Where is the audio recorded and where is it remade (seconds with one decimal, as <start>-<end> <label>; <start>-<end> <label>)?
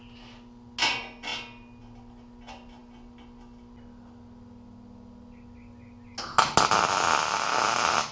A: 0.0-8.1 recorded